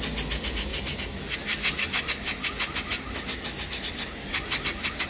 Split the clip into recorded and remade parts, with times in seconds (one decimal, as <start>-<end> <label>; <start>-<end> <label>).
0.0-5.1 recorded